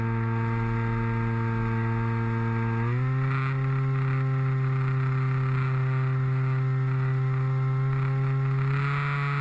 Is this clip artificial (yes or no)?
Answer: no